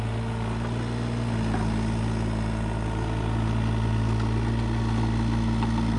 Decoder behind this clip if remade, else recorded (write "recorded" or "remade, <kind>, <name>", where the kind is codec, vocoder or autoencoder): recorded